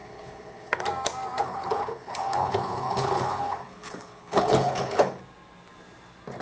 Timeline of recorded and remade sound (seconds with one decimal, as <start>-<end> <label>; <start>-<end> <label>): 0.0-0.8 remade; 0.8-1.4 recorded; 1.4-5.2 remade; 5.2-6.4 recorded